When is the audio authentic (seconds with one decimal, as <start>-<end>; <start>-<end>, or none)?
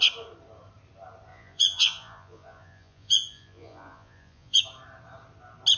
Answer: 0.0-1.3; 4.6-5.8